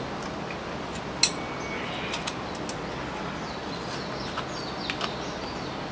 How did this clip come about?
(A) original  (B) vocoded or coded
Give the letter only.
A